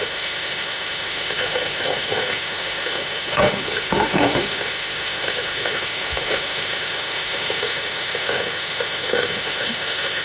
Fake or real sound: fake